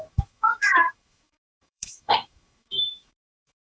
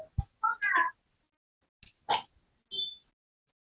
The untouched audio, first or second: second